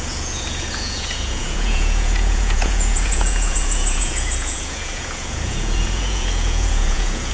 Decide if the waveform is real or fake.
fake